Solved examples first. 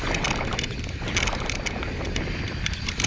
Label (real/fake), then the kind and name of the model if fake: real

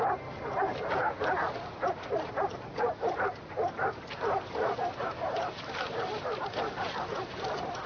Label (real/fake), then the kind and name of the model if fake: real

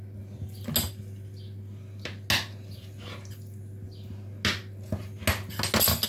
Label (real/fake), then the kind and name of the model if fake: real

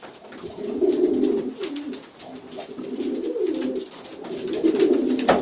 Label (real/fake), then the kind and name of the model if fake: real